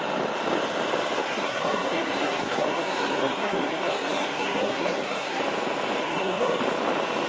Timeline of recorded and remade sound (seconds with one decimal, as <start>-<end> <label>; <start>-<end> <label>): 0.0-1.2 recorded; 1.2-5.4 remade; 5.4-6.0 recorded; 6.0-6.6 remade; 6.6-7.3 recorded

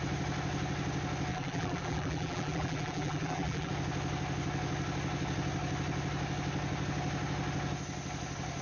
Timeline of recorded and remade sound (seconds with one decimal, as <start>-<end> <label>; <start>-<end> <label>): 0.0-1.3 recorded; 1.3-3.7 remade; 3.7-8.6 recorded